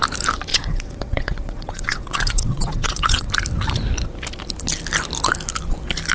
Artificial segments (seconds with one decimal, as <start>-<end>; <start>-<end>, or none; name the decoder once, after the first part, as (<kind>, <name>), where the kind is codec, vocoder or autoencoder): 0.5-3.3 (vocoder, WaveNeXt)